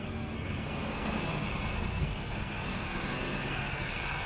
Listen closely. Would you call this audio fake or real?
fake